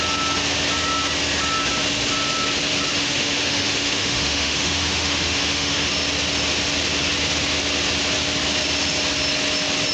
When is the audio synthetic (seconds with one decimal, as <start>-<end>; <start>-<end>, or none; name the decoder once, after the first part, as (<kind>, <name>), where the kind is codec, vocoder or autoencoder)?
2.9-5.9 (autoencoder, DAC-VAE)